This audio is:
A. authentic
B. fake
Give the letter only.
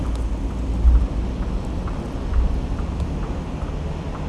A